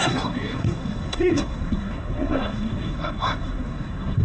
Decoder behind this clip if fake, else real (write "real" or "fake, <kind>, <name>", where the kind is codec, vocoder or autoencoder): fake, codec, SNAC